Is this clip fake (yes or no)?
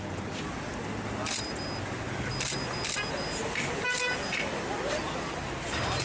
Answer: no